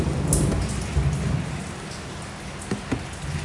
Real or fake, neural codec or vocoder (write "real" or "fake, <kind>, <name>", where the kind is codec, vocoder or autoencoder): real